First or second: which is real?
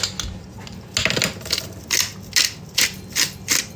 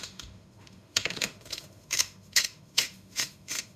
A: first